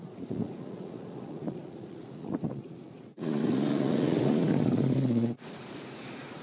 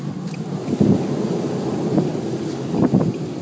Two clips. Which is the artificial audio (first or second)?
first